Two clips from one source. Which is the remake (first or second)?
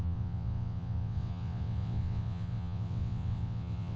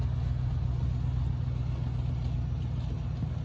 first